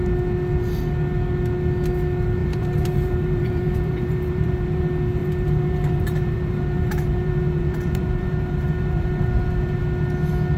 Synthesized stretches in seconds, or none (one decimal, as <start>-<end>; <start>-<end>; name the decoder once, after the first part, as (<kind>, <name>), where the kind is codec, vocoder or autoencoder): 2.4-4.8 (vocoder, BigVGAN v2); 5.2-9.8